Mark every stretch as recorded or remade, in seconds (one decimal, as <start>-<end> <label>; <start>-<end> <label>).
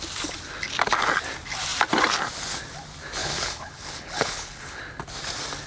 0.0-3.2 recorded; 3.2-4.8 remade; 4.8-5.7 recorded